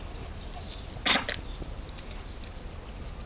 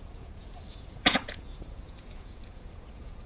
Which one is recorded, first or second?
first